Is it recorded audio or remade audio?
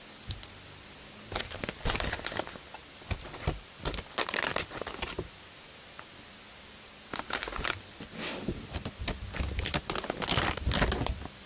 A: recorded